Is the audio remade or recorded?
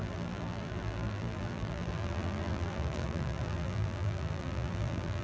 remade